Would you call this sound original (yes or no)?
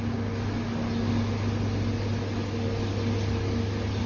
yes